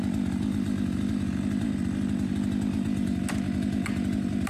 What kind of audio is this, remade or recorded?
recorded